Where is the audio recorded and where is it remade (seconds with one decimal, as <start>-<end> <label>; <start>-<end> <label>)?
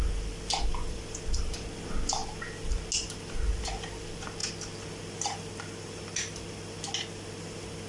0.0-7.9 recorded